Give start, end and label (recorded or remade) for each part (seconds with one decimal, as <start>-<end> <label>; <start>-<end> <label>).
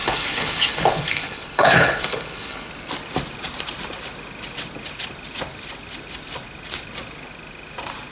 0.0-2.7 remade; 2.7-8.1 recorded